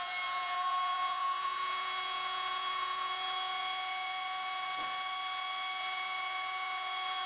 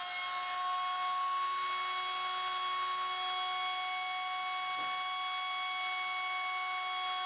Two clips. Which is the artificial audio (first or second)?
first